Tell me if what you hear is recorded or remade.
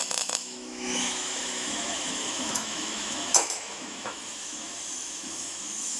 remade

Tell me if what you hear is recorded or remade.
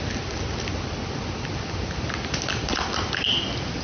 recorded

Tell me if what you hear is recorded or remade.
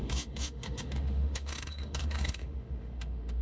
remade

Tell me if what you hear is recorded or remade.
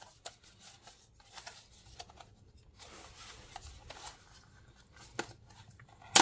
recorded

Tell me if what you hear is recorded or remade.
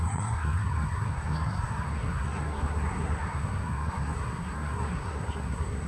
remade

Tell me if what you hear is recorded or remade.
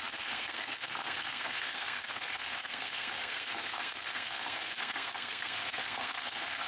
remade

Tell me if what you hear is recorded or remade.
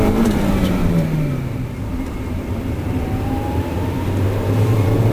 remade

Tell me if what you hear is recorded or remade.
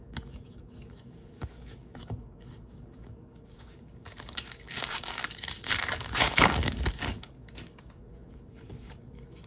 remade